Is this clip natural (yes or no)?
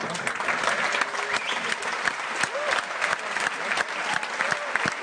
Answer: yes